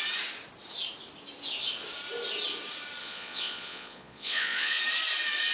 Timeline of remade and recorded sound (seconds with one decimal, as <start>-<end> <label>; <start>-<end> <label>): 0.0-3.0 recorded; 3.0-4.8 remade; 4.8-5.5 recorded